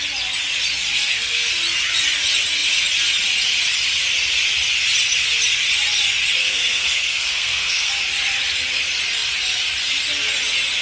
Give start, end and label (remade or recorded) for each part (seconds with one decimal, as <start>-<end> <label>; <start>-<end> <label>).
0.0-0.9 recorded; 0.9-1.5 remade; 1.5-6.4 recorded; 6.4-7.9 remade; 7.9-10.8 recorded